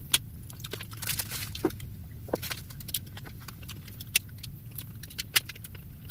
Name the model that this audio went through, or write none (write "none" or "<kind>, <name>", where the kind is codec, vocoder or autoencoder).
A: none